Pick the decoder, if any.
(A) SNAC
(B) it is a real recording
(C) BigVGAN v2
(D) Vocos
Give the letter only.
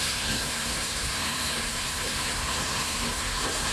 A